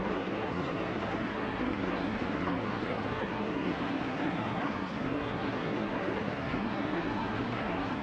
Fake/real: fake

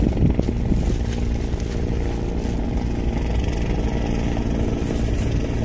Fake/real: real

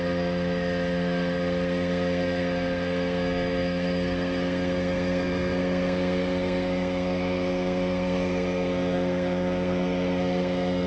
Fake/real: fake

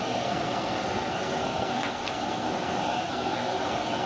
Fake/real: fake